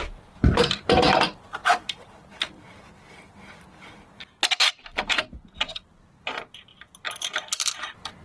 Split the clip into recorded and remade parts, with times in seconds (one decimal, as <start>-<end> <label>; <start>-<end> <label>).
0.0-1.6 remade; 1.6-4.7 recorded; 4.7-8.2 remade